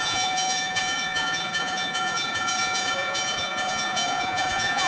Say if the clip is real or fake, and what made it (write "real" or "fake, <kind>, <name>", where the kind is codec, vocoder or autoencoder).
fake, vocoder, Vocos